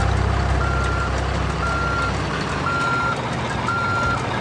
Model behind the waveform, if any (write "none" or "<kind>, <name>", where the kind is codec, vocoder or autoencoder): none